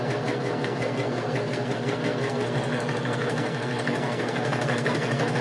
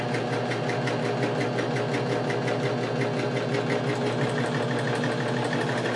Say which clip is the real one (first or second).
second